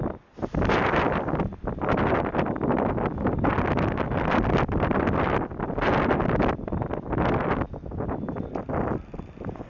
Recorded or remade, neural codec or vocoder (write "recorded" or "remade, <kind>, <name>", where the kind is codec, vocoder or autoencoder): recorded